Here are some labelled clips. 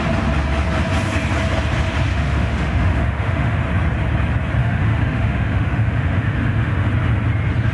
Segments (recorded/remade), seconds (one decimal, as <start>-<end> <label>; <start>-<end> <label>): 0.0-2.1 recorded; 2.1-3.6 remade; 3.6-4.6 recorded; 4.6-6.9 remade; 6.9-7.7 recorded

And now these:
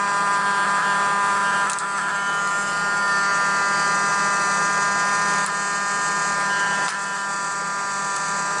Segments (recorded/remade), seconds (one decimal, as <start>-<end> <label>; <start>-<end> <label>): 0.0-8.6 recorded

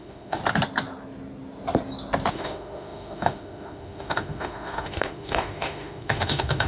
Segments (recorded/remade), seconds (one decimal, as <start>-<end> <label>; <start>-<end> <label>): 0.0-0.4 remade; 0.4-2.3 recorded; 2.3-6.7 remade